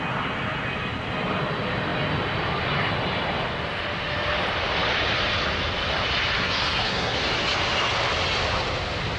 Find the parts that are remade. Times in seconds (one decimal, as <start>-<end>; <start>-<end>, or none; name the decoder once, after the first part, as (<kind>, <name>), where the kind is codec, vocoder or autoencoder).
6.4-7.2 (codec, SNAC)